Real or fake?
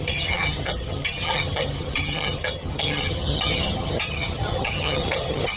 fake